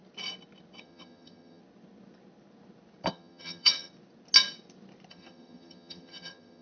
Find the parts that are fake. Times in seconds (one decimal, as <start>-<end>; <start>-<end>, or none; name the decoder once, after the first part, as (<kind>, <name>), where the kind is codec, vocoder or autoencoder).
0.8-1.6 (vocoder, HiFi-GAN); 3.1-3.9; 5.1-6.6